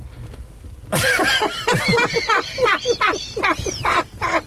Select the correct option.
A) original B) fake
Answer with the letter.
A